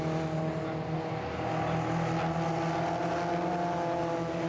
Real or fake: real